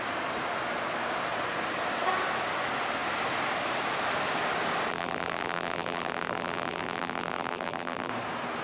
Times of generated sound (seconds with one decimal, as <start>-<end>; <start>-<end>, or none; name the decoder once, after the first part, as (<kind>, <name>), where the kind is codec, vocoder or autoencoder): 4.9-8.1 (vocoder, BigVGAN v2)